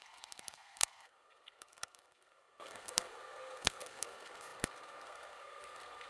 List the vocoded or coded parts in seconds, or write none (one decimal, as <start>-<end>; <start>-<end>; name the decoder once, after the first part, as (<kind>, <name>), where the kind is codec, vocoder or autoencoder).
0.0-6.1 (codec, SNAC)